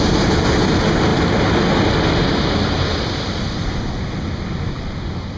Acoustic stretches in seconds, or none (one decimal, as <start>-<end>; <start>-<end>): 0.0-5.4